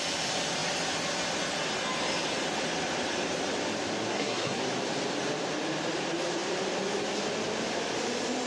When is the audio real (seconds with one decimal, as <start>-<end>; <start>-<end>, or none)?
0.0-4.1; 4.6-8.5